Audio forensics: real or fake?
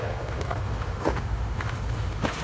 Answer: fake